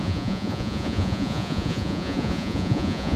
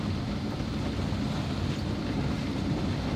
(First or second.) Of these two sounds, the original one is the second